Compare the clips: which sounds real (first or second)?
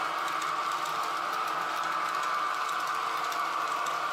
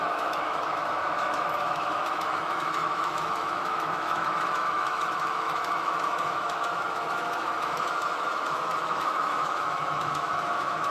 first